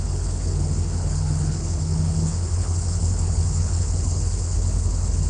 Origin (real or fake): fake